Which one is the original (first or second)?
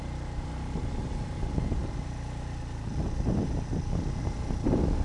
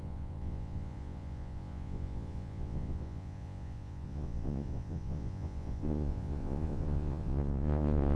first